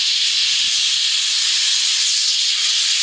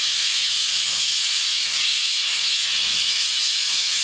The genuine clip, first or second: first